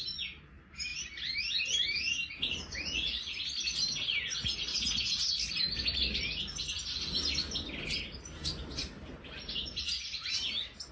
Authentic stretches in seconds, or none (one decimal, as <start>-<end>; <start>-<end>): 0.0-4.7; 5.2-10.9